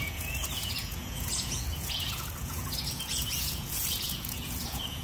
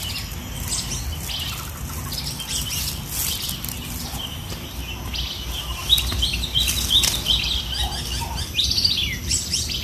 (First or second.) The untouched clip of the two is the second